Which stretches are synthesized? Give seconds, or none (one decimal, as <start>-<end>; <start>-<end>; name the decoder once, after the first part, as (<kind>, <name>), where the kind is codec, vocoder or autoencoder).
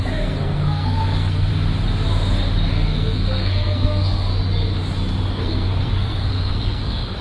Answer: 0.0-1.5 (codec, SNAC); 2.7-4.3; 5.3-7.2